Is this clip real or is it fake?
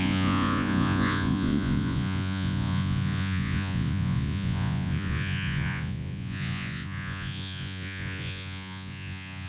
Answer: fake